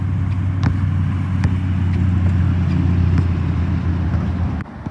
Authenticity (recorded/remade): recorded